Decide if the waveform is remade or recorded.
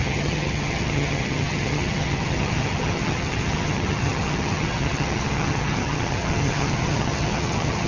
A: remade